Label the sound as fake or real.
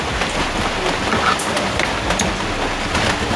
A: real